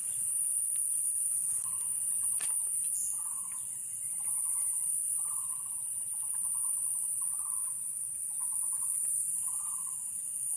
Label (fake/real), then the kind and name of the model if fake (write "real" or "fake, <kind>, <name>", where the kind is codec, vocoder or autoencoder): real